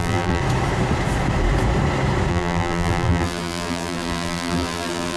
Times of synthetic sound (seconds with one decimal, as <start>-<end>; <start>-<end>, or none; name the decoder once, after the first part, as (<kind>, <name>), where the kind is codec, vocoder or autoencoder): 0.0-0.4 (vocoder, BigVGAN v2); 2.3-5.2